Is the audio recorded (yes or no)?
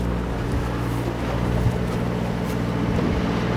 yes